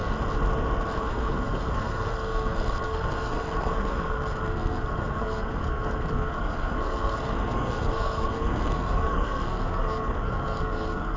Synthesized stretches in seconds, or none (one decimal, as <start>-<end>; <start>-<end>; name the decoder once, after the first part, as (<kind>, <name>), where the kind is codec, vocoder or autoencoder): 1.0-11.2 (codec, SNAC)

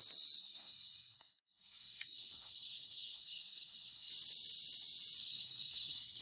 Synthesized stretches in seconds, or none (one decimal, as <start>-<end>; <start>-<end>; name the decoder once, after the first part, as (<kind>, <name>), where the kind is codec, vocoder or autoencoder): 0.4-4.1 (codec, SNAC); 5.2-6.2

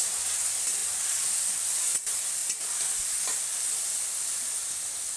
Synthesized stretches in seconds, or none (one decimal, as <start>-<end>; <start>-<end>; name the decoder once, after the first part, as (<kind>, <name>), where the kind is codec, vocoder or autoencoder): none